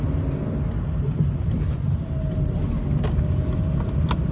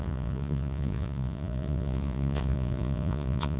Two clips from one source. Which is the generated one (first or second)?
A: second